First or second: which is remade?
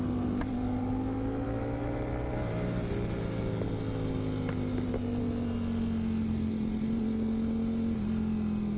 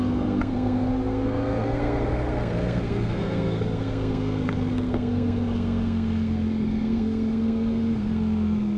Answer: second